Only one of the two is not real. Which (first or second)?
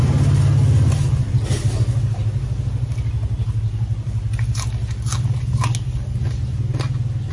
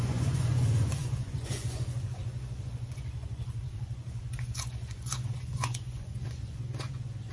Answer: second